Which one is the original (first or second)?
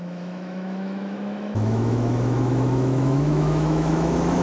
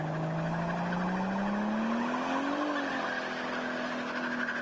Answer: second